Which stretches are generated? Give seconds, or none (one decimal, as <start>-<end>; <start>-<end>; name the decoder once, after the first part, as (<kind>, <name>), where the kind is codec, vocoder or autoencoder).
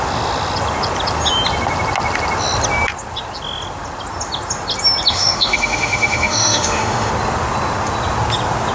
5.1-7.1 (autoencoder, DAC-VAE)